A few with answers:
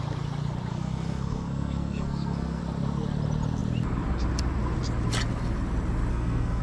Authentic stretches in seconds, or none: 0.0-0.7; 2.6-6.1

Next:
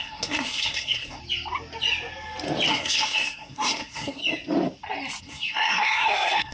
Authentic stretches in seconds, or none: 1.2-2.7; 4.2-5.2

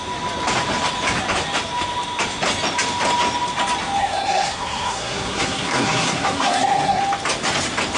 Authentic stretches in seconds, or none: 0.0-4.0; 7.0-8.0

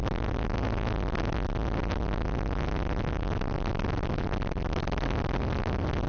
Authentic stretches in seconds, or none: 0.0-6.1